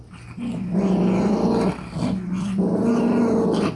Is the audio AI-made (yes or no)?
no